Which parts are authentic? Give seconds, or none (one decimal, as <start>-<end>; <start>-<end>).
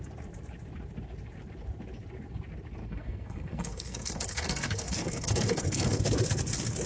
0.0-2.8; 6.0-6.9